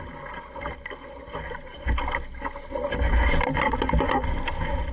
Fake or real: real